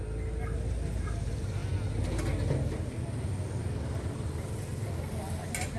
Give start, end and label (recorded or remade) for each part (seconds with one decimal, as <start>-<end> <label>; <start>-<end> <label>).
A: 0.0-5.8 recorded